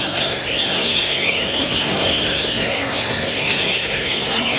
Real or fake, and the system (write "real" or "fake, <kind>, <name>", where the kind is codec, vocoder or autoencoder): fake, codec, SNAC